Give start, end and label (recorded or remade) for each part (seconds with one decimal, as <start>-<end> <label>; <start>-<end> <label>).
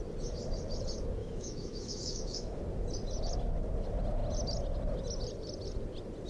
0.0-1.2 recorded; 1.2-2.6 remade; 2.6-6.3 recorded